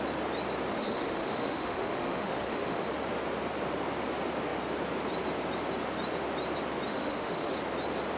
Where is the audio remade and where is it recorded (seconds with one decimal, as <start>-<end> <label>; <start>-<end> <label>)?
0.0-0.7 recorded; 0.7-2.9 remade; 2.9-6.9 recorded; 6.9-7.6 remade; 7.6-8.2 recorded